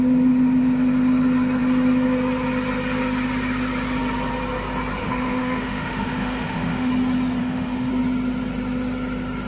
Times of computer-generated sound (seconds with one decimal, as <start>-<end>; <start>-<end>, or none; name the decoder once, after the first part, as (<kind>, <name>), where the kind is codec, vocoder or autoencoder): 5.0-6.9 (autoencoder, DAC-VAE); 7.4-7.9